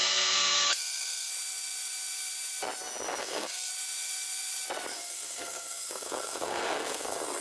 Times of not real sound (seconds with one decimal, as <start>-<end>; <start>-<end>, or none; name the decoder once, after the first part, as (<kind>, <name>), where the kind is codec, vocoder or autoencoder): 0.0-1.3 (codec, SNAC); 3.2-3.7; 4.9-7.4